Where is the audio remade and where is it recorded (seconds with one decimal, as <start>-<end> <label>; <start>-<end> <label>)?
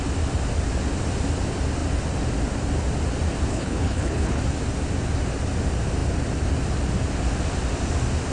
0.0-3.5 recorded; 3.5-4.4 remade; 4.4-8.3 recorded